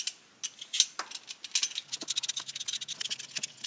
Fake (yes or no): no